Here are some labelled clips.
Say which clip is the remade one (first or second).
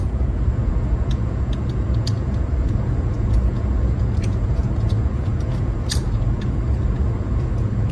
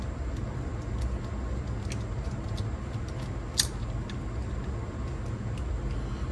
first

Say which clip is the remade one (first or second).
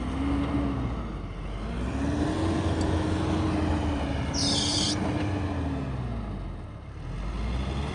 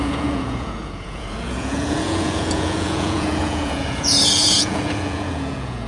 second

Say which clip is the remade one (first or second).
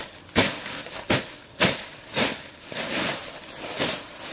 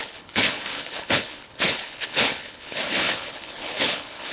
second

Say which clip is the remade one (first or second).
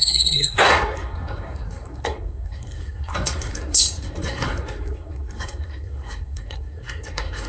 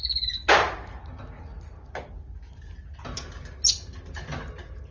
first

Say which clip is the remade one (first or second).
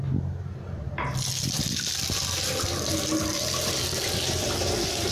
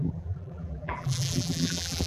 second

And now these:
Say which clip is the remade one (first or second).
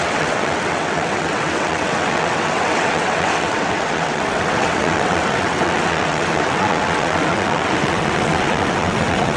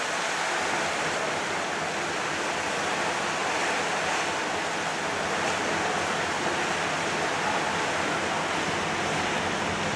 first